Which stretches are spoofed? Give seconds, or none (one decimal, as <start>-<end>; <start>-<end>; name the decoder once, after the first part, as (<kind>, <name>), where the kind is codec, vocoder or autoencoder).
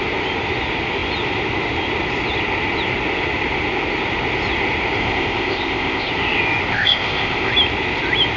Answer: 5.0-6.1 (codec, ZipCodec); 6.7-7.5